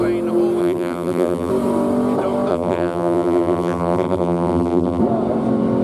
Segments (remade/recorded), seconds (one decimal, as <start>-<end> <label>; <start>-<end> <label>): 0.0-0.6 recorded; 0.6-1.5 remade; 1.5-2.5 recorded; 2.5-5.0 remade; 5.0-5.8 recorded